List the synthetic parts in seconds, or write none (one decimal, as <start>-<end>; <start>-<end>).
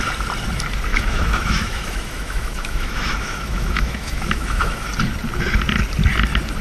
0.9-4.9